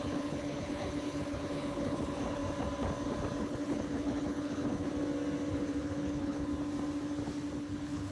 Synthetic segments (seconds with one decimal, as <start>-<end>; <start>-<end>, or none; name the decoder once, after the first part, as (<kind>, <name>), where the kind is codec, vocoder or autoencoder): 0.0-2.4 (codec, HILCodec); 3.4-4.9; 5.5-6.5; 7.6-8.1